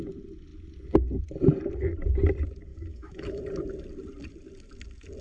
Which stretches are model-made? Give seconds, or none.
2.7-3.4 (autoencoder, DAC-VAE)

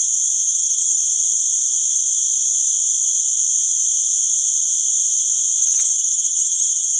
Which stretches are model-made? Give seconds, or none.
0.4-1.0 (vocoder, HiFi-GAN); 5.6-7.0

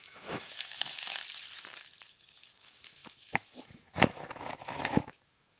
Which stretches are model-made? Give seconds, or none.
0.0-1.2 (autoencoder, DAC-VAE); 2.1-5.6

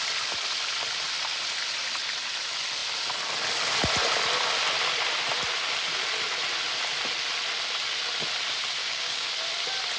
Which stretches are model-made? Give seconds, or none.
8.8-9.3 (codec, DAC)

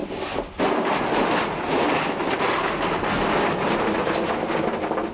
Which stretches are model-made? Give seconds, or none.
none

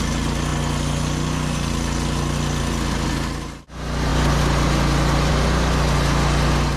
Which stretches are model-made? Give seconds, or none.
none